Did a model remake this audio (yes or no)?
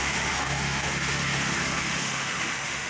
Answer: yes